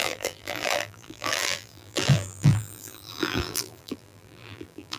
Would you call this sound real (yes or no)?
no